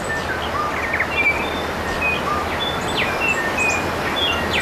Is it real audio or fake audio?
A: real